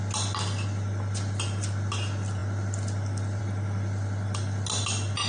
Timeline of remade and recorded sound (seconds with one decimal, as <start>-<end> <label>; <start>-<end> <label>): 0.0-5.3 recorded